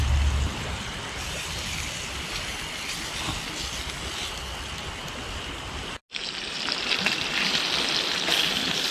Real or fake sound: real